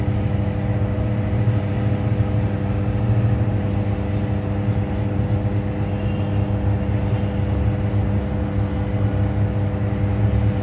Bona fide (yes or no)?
yes